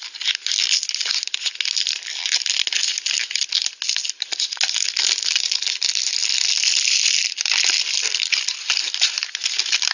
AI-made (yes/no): no